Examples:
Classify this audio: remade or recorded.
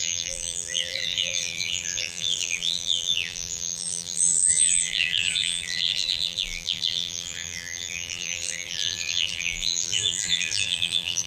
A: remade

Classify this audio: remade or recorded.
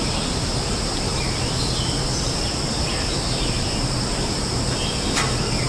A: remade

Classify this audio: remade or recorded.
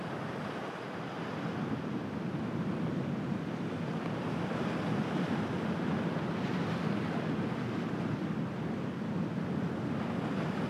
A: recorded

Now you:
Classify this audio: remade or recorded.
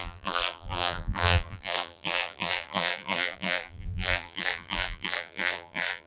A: remade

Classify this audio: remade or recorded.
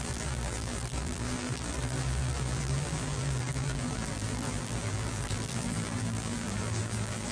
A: remade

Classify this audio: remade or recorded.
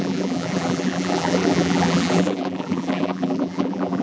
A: remade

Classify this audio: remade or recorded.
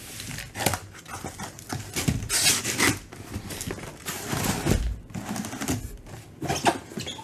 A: recorded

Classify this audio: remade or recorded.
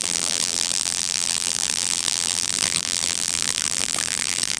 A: remade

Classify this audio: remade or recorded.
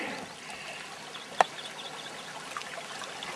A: recorded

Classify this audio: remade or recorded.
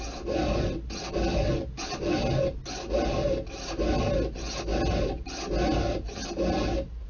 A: recorded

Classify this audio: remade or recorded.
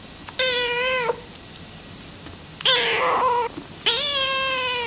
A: remade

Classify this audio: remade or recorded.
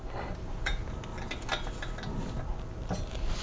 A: recorded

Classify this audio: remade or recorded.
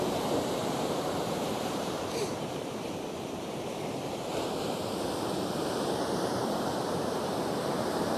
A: remade